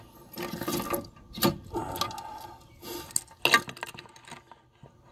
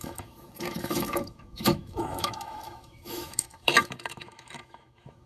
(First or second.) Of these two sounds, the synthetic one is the second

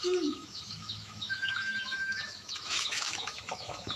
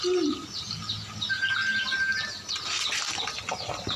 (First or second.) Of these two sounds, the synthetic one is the first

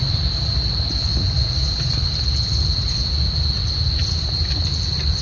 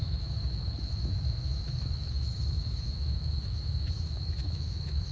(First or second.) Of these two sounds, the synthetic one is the second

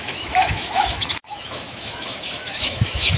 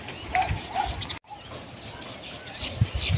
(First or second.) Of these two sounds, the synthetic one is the first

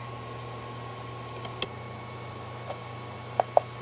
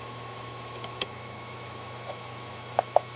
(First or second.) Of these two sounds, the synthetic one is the second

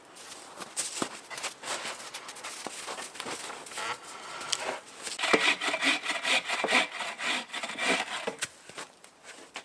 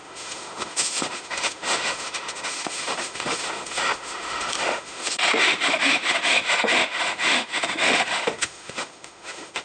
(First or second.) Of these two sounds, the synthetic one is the second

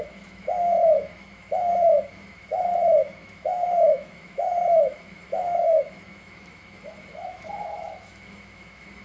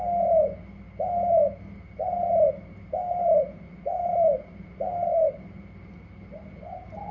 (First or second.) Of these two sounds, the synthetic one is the first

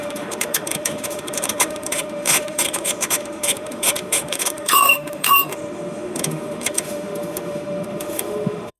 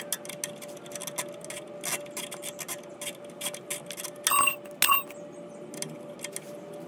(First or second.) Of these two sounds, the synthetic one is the first